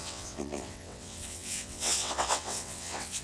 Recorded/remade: remade